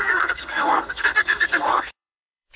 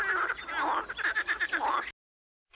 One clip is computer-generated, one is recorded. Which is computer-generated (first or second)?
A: first